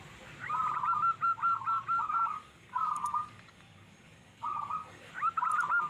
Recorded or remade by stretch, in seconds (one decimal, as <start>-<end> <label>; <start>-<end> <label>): 0.0-2.1 recorded; 2.1-5.1 remade; 5.1-5.9 recorded